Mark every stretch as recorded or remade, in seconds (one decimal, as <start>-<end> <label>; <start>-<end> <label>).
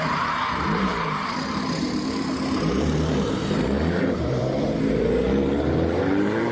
0.0-6.5 remade